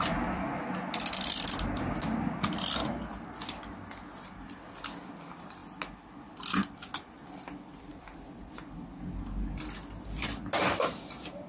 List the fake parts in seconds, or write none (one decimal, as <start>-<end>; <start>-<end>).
none